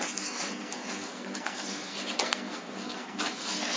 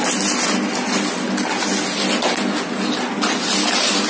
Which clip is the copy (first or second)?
first